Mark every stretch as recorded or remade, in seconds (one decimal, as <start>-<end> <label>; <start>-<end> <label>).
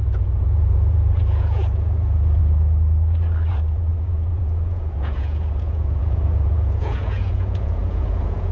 0.0-2.4 remade; 2.4-3.5 recorded; 3.5-8.5 remade